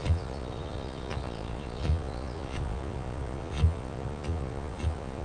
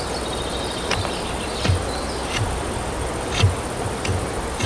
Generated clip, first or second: first